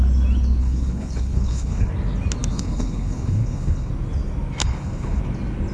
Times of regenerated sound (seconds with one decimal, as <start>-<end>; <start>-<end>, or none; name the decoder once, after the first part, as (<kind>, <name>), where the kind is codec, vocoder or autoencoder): 0.6-1.9 (codec, HILCodec); 2.5-3.9; 4.6-5.2